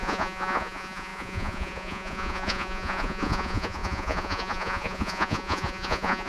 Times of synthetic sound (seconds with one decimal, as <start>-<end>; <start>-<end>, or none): 0.0-6.3